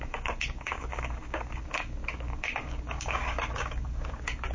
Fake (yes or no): yes